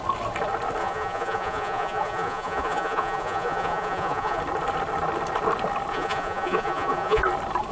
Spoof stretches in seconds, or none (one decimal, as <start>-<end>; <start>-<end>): 0.8-4.4; 5.9-7.2